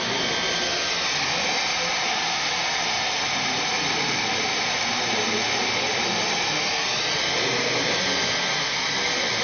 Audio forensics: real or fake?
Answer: real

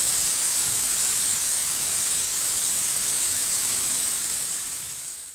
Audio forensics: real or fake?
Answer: fake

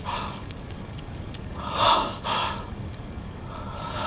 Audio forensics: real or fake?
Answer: fake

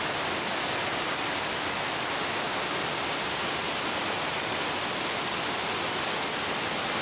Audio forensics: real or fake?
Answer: real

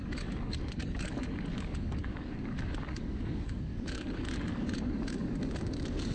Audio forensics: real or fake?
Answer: fake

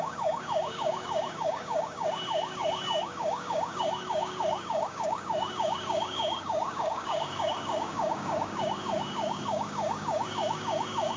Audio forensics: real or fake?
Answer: fake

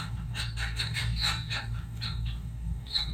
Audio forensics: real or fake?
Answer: fake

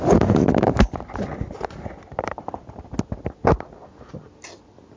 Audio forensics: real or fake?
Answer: real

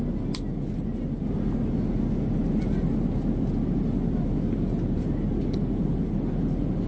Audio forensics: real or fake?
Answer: real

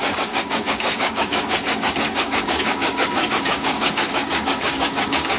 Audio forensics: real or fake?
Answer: fake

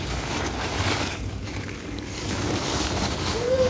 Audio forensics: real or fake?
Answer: fake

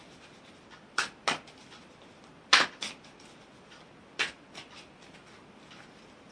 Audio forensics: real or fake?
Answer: real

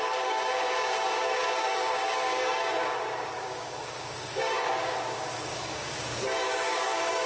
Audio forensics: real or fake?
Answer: fake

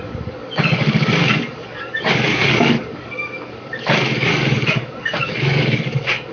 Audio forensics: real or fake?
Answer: fake